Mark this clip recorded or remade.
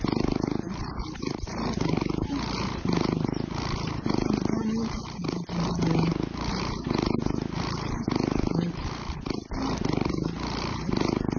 recorded